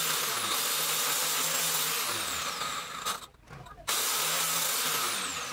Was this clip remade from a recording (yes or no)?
no